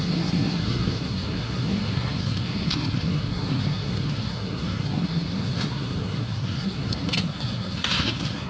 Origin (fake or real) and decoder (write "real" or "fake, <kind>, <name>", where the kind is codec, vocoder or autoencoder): fake, codec, SNAC